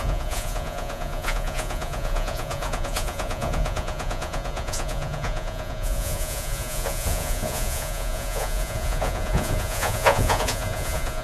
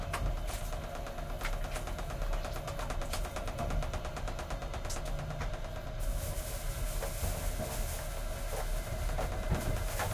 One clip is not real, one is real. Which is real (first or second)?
second